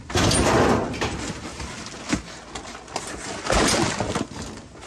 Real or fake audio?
real